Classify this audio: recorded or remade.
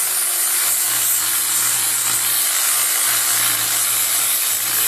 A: recorded